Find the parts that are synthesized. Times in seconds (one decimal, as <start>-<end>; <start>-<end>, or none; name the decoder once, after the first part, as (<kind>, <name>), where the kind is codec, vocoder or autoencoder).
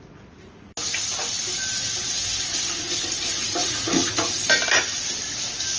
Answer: 3.6-4.2 (vocoder, Vocos)